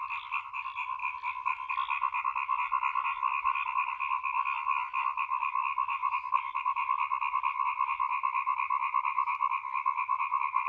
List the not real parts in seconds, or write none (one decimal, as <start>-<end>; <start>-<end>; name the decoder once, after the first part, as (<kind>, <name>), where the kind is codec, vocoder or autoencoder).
none